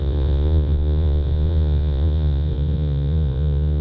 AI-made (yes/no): yes